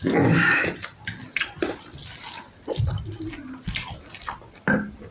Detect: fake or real real